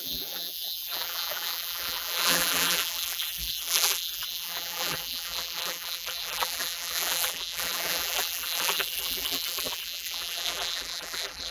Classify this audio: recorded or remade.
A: remade